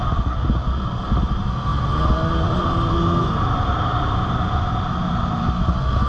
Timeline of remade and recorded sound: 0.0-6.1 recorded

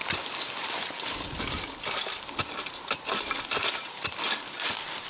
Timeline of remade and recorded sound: 0.0-5.1 recorded

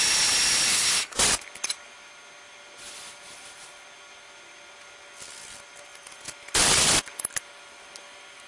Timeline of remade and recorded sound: 0.0-0.7 recorded; 0.7-1.2 remade; 1.2-8.5 recorded

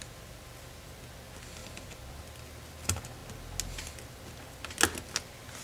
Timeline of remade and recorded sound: 0.0-5.6 recorded

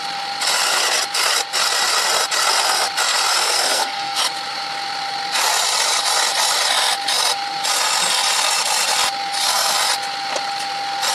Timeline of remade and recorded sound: 0.0-3.3 recorded; 3.3-4.2 remade; 4.2-11.1 recorded

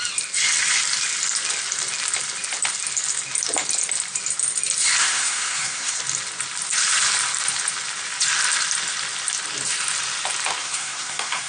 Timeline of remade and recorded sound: 0.0-5.0 recorded; 5.0-6.0 remade; 6.0-10.6 recorded; 10.6-11.5 remade

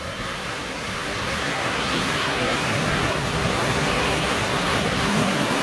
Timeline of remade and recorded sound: 0.0-5.6 remade